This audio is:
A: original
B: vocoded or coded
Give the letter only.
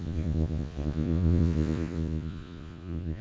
B